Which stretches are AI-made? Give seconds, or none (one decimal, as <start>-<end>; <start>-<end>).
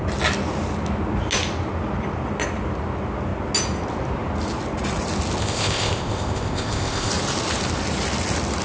5.4-7.1